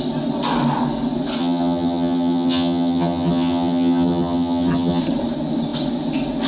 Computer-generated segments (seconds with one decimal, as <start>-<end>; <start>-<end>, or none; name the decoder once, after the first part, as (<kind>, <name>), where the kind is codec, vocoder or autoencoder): 1.4-5.0 (vocoder, HiFi-GAN)